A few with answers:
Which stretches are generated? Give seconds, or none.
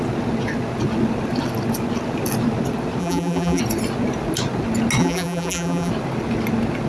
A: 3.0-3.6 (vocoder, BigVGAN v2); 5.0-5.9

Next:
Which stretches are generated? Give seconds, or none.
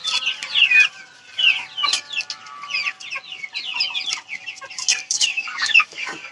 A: 5.0-6.3 (codec, DAC)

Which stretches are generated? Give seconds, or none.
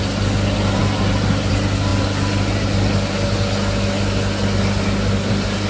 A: none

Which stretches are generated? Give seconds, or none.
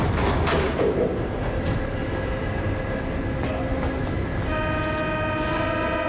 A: none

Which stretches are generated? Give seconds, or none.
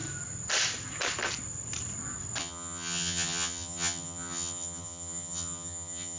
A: 2.4-6.2 (vocoder, HiFi-GAN)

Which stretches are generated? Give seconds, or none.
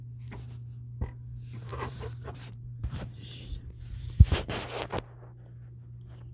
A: 1.7-4.9 (vocoder, BigVGAN v2)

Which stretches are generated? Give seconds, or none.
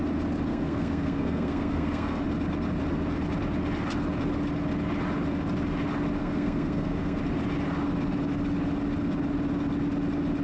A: 0.5-2.2 (codec, SNAC); 6.2-7.2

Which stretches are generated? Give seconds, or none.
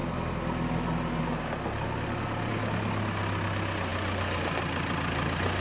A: none